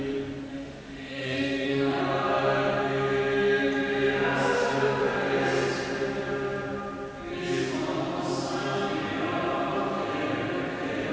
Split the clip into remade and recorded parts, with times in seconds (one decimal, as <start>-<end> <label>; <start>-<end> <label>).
0.0-0.5 recorded; 0.5-2.0 remade; 2.0-11.1 recorded